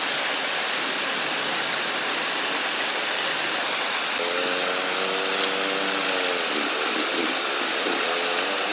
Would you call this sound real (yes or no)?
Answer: yes